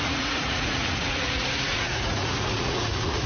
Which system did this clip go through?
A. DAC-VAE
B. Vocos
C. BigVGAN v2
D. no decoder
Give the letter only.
B